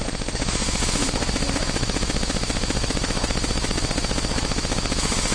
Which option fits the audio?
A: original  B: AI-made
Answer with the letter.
B